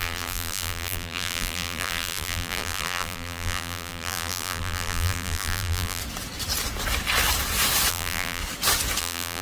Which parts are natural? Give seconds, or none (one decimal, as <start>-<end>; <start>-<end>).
6.0-7.9; 8.4-9.0